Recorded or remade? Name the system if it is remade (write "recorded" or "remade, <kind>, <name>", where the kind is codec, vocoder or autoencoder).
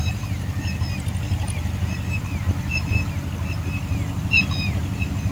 recorded